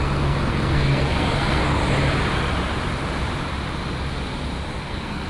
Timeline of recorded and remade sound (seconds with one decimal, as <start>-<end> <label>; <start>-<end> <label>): 0.0-1.6 remade; 1.6-4.8 recorded; 4.8-5.3 remade